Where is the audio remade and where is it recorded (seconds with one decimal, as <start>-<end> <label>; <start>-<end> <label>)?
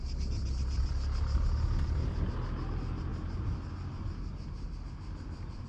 0.0-5.7 recorded